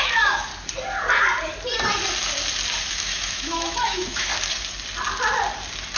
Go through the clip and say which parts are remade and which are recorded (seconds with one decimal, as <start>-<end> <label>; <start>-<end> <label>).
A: 0.0-0.5 remade; 0.5-2.9 recorded; 2.9-4.3 remade; 4.3-6.0 recorded